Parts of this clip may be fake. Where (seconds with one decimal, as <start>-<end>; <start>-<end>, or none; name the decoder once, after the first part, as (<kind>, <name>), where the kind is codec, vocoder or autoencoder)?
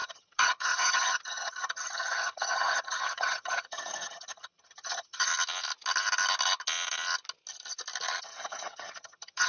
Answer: 0.0-5.3 (vocoder, HiFi-GAN); 8.2-9.5